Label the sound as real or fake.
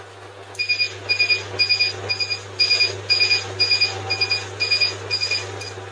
real